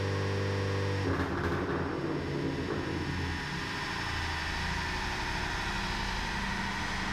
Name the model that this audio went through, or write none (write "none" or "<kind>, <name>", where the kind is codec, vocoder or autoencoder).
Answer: none